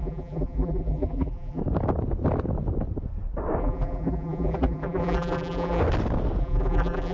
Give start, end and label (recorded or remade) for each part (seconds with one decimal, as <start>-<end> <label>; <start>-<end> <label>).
0.0-1.6 remade; 1.6-3.6 recorded; 3.6-5.8 remade; 5.8-6.4 recorded; 6.4-7.1 remade

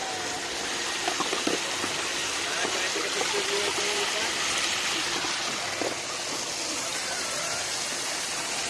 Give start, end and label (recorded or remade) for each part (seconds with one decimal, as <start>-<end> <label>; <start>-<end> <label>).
0.0-6.9 recorded; 6.9-7.7 remade; 7.7-8.7 recorded